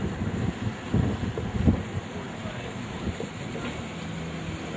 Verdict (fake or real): real